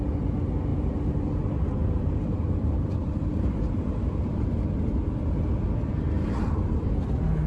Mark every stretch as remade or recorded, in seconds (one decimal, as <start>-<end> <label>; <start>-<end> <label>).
0.0-0.7 recorded; 0.7-1.4 remade; 1.4-1.8 recorded; 1.8-4.5 remade; 4.5-7.5 recorded